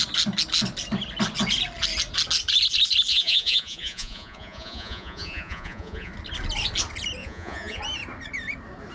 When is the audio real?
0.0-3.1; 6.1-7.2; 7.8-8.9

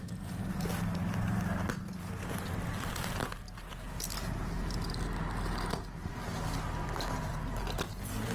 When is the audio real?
0.0-8.3

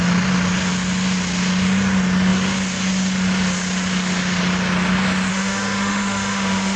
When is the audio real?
0.0-5.3

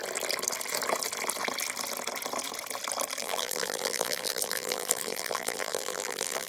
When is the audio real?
0.0-3.2

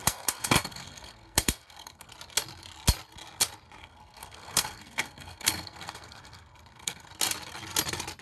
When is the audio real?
2.1-3.8; 7.1-8.2

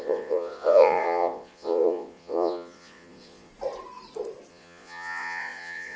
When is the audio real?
3.5-4.5

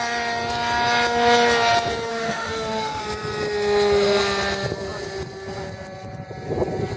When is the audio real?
0.0-2.1; 3.0-7.0

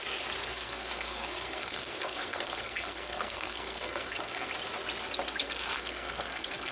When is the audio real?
0.0-0.5; 4.5-5.4